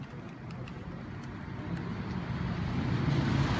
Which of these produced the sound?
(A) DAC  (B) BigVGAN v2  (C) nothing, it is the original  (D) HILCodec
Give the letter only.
C